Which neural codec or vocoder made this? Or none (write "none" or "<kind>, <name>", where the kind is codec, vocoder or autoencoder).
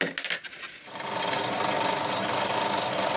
none